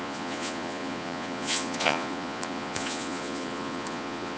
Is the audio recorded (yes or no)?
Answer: no